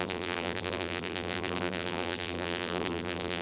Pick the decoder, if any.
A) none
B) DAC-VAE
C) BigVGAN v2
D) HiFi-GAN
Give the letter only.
C